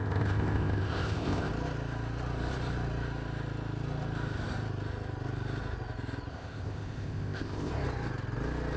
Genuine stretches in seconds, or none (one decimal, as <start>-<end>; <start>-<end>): 1.5-6.3; 7.7-8.8